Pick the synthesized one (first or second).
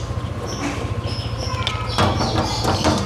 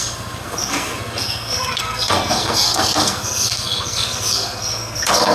second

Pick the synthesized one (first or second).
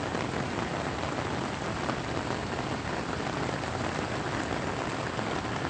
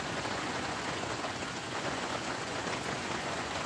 second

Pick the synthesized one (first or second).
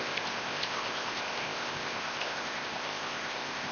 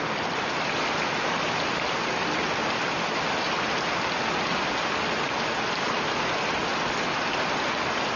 first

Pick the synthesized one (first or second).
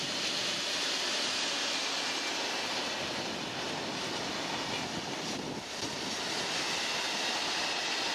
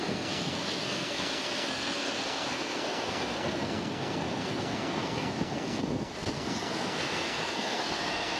second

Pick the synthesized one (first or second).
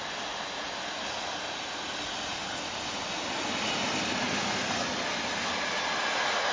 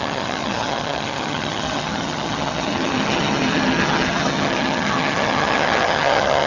second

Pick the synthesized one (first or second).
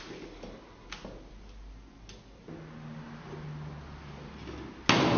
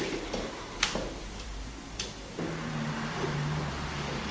second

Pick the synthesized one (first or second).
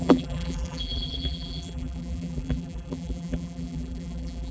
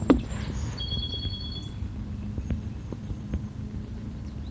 first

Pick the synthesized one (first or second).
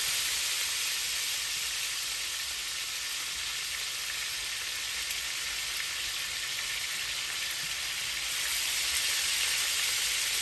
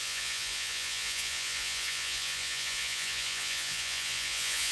second